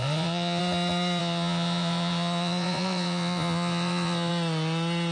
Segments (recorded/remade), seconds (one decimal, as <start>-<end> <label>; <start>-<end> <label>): 0.0-0.6 remade; 0.6-1.2 recorded; 1.2-4.3 remade; 4.3-5.1 recorded